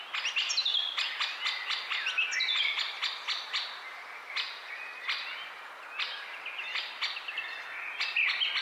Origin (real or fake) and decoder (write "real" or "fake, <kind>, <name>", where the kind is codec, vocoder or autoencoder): real